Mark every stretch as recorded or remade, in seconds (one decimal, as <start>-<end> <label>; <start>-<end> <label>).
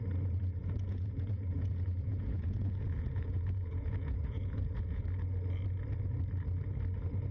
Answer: 0.0-0.6 recorded; 0.6-5.0 remade; 5.0-7.3 recorded